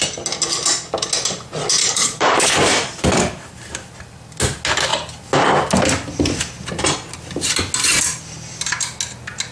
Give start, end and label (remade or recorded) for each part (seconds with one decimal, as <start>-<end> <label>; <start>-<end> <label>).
0.0-1.8 recorded; 1.8-3.5 remade; 3.5-9.5 recorded